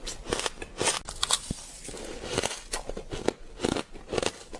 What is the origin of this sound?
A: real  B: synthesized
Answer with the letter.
A